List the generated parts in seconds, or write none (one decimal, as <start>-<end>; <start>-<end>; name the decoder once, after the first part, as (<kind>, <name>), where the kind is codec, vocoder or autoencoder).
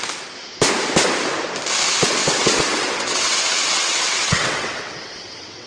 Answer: 2.2-5.7 (vocoder, WaveNeXt)